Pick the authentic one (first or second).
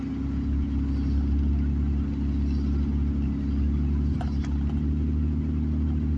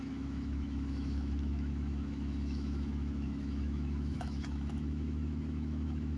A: first